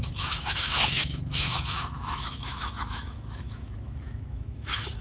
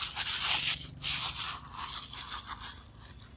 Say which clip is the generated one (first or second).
first